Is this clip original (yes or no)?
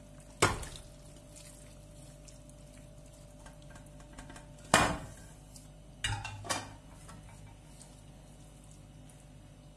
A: yes